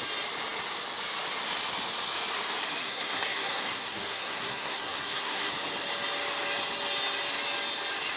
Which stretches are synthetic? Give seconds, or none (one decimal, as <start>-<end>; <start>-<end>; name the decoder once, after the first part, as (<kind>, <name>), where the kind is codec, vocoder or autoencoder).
2.8-5.5 (codec, SNAC)